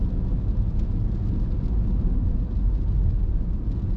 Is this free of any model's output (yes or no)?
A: yes